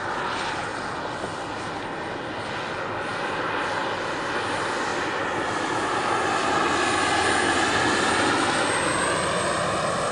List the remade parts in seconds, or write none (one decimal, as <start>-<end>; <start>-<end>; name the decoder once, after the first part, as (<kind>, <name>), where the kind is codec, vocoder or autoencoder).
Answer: none